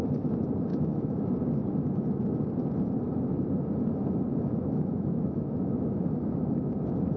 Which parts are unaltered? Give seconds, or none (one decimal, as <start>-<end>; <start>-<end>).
0.0-0.7; 1.2-4.3; 6.8-7.2